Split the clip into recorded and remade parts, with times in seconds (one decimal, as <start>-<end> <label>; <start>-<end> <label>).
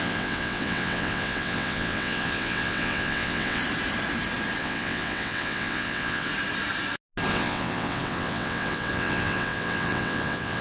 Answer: 0.0-3.6 remade; 3.6-4.6 recorded; 4.6-6.3 remade; 6.3-7.3 recorded; 7.3-10.6 remade